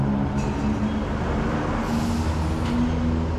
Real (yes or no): yes